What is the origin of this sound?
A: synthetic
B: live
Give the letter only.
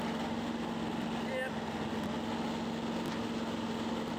B